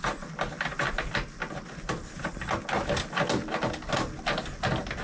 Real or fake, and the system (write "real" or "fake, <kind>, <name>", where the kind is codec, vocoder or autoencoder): real